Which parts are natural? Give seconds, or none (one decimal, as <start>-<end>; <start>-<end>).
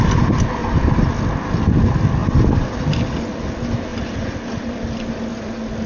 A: 0.0-0.6; 1.5-3.9; 5.1-5.9